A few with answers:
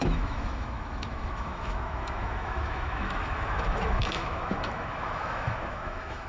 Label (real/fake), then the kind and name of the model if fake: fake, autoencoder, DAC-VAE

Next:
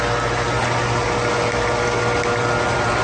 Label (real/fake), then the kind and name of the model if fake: real